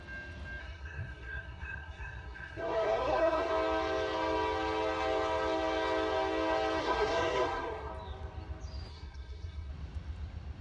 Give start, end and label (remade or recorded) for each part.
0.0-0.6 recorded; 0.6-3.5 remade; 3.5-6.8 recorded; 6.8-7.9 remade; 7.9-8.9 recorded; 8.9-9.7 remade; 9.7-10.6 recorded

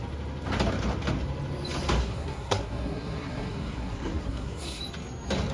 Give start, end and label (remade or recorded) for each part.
0.0-2.0 recorded; 2.0-4.8 remade; 4.8-5.5 recorded

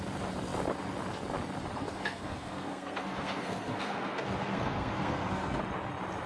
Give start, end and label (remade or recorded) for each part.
0.0-1.8 recorded; 1.8-5.6 remade; 5.6-6.3 recorded

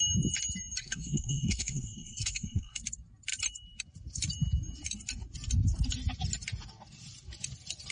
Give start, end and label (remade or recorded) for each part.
0.0-0.8 recorded; 0.8-2.8 remade; 2.8-7.9 recorded

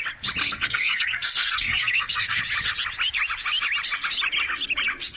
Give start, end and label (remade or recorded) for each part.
0.0-0.4 recorded; 0.4-2.4 remade; 2.4-5.2 recorded

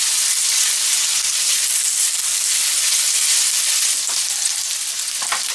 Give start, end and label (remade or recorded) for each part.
0.0-5.5 recorded

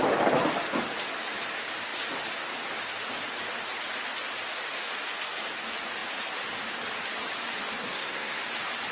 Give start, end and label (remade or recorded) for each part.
0.0-7.8 recorded; 7.8-8.4 remade; 8.4-8.9 recorded